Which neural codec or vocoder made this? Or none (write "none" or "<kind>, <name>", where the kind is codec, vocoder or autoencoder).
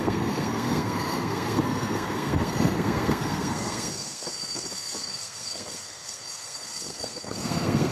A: codec, SNAC